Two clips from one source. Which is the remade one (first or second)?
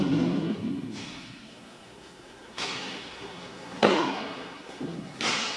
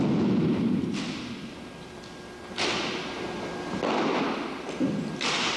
first